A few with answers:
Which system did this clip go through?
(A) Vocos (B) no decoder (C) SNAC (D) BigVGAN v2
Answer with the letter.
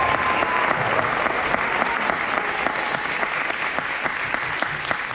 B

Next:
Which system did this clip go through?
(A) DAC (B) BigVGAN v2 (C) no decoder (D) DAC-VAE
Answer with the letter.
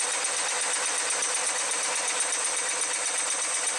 C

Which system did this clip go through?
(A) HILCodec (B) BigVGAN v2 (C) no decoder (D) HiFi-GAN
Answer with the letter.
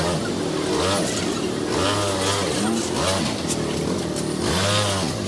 C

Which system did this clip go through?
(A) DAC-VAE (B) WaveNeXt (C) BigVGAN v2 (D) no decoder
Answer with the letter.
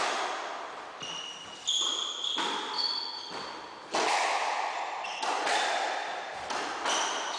D